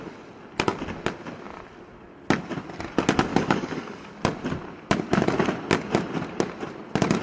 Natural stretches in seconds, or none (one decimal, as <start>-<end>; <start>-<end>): 0.0-3.3; 4.1-7.2